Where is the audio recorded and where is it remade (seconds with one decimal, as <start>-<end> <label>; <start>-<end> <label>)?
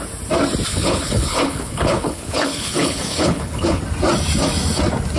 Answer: 0.0-0.7 recorded; 0.7-3.8 remade; 3.8-5.2 recorded